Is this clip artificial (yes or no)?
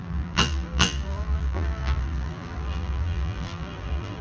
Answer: yes